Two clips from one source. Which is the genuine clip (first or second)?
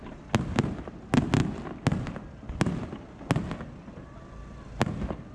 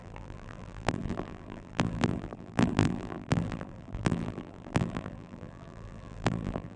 first